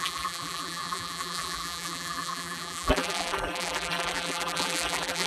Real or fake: fake